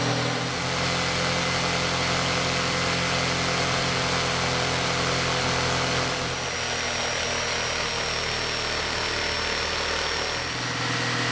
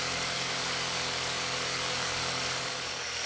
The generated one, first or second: second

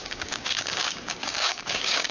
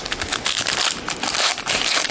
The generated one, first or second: first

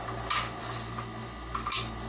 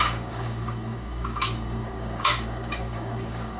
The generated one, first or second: second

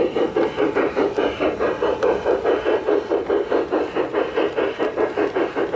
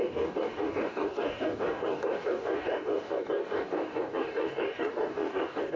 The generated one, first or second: second